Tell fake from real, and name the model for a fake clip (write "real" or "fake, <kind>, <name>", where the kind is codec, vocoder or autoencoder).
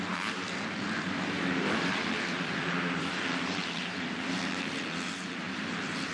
fake, vocoder, BigVGAN v2